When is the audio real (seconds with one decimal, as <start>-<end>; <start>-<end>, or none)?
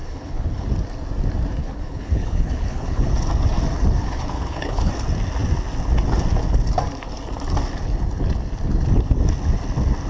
0.7-1.6; 3.1-4.0; 4.9-10.1